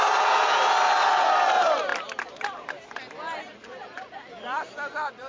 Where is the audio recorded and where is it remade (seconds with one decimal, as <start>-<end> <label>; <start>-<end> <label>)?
0.0-5.3 recorded